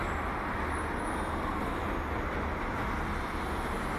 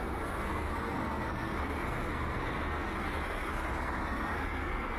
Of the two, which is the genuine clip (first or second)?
first